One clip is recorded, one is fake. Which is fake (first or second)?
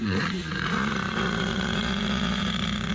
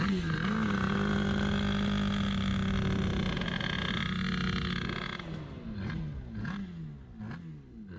first